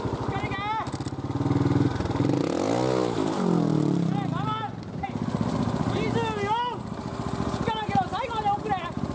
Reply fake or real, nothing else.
real